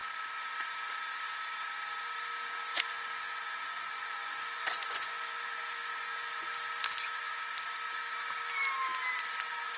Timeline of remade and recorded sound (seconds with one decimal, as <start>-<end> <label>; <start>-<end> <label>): 0.0-2.7 recorded; 2.7-6.5 remade; 6.5-9.8 recorded